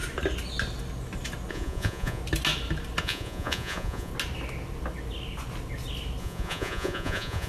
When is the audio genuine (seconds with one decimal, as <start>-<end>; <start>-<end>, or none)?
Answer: 0.0-1.5; 2.2-3.0; 4.1-6.2